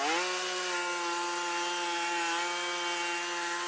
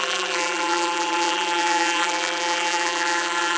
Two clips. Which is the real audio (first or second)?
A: first